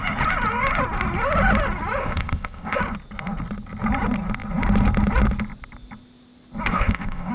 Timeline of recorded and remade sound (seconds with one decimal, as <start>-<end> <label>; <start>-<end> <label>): 0.0-2.0 recorded; 2.0-2.8 remade; 2.8-6.7 recorded; 6.7-7.3 remade